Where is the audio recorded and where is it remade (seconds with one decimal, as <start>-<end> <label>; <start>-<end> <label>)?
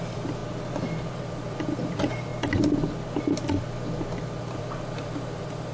0.0-0.4 remade; 0.4-1.1 recorded; 1.1-2.3 remade; 2.3-4.4 recorded; 4.4-5.7 remade